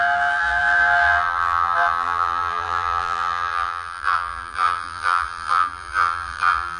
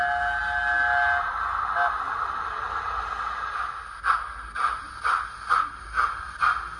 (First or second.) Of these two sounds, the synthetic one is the first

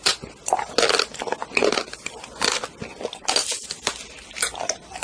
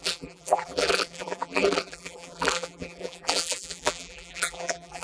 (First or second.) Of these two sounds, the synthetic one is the second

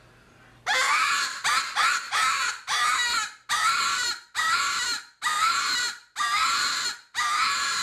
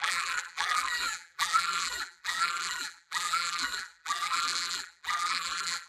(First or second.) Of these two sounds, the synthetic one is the second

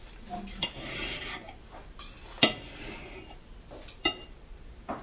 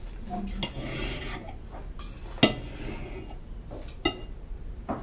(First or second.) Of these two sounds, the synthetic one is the first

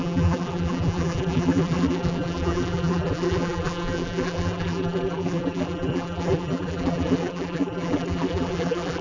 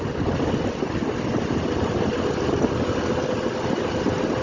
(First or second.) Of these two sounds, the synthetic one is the first